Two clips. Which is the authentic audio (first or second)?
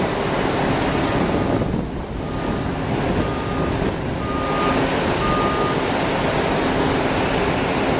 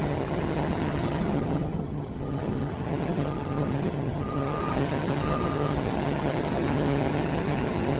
first